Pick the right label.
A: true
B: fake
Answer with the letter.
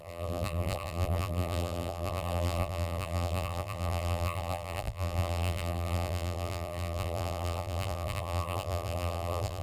B